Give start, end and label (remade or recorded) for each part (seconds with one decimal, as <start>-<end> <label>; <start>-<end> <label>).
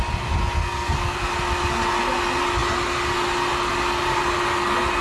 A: 0.0-0.6 recorded; 0.6-1.2 remade; 1.2-5.0 recorded